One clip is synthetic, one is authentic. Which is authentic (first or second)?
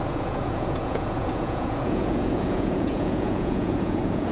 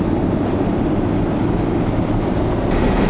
second